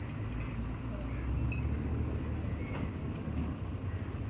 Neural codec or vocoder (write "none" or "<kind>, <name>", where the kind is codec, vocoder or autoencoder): none